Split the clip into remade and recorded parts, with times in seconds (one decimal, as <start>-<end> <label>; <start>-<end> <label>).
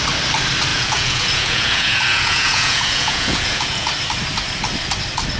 0.0-0.7 recorded; 0.7-3.9 remade; 3.9-5.4 recorded